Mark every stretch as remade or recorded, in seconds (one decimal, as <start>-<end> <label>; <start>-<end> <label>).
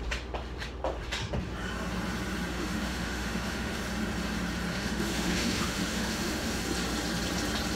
0.0-2.5 recorded; 2.5-3.8 remade; 3.8-4.7 recorded; 4.7-6.6 remade; 6.6-7.8 recorded